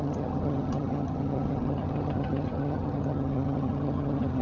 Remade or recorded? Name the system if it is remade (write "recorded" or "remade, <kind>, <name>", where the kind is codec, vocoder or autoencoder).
remade, vocoder, HiFi-GAN